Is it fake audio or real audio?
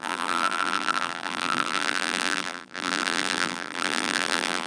fake